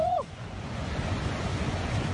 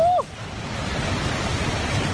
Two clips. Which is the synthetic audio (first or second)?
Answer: first